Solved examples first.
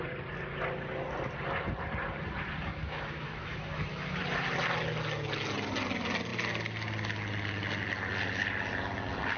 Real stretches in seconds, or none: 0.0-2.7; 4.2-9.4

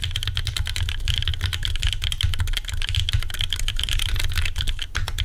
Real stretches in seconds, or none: none

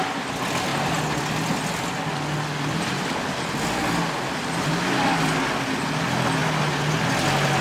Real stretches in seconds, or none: 0.0-7.6